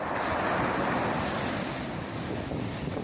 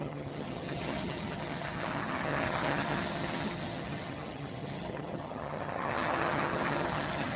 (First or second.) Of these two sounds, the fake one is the second